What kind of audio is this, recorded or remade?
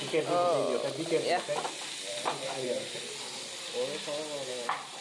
recorded